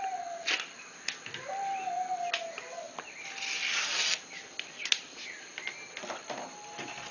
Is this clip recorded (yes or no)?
yes